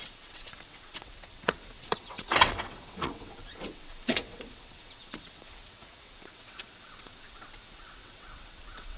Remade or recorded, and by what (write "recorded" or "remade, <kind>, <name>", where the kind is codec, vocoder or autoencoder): remade, vocoder, WaveNeXt